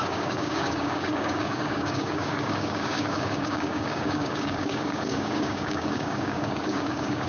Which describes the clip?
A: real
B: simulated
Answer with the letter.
B